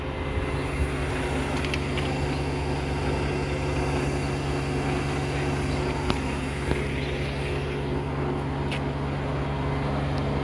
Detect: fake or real real